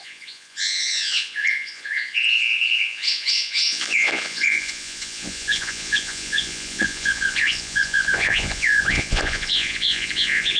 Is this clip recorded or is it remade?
remade